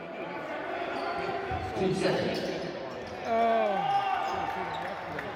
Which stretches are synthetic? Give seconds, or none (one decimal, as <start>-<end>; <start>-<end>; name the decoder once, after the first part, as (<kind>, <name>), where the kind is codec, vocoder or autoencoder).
0.0-0.6 (vocoder, BigVGAN v2); 2.2-2.8